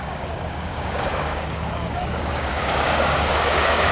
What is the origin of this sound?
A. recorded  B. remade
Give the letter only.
B